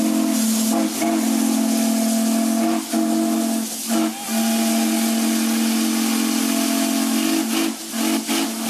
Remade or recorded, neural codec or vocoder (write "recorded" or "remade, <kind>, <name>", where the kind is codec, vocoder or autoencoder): recorded